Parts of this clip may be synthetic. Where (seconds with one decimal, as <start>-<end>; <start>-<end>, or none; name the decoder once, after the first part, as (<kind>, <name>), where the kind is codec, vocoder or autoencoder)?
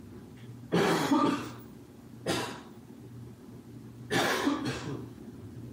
4.3-5.2 (autoencoder, DAC-VAE)